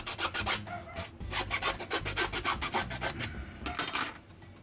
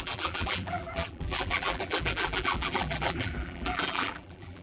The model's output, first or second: second